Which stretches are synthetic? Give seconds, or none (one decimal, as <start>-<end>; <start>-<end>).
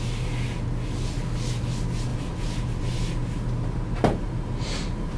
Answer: none